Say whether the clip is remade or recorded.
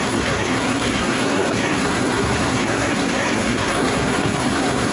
remade